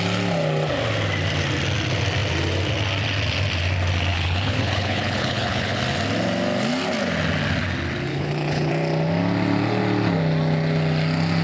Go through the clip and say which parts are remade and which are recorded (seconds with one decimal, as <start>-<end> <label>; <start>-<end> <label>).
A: 0.0-4.1 recorded; 4.1-5.8 remade; 5.8-8.1 recorded; 8.1-8.7 remade; 8.7-11.4 recorded